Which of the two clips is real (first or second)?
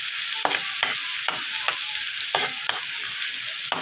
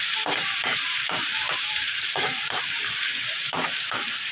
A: first